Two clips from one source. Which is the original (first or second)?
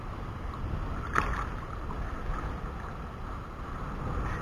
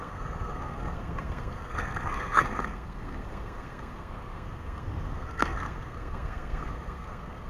first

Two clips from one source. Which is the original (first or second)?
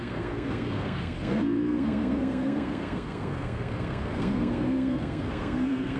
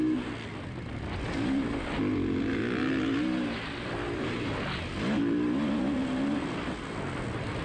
second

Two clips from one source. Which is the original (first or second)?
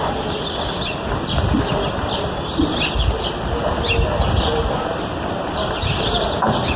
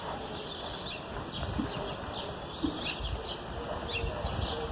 second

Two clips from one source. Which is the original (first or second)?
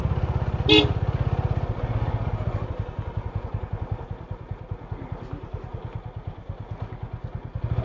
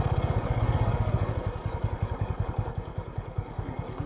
first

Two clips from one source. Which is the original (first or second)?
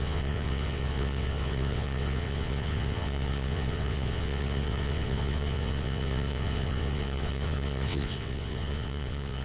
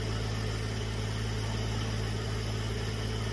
second